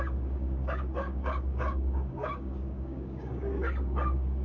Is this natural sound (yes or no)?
no